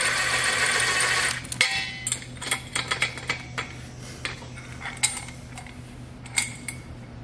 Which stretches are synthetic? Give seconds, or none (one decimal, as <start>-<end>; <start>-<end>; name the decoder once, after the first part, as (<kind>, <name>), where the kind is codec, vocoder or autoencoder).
6.3-7.2 (vocoder, BigVGAN v2)